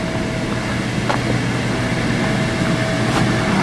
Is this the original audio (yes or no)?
yes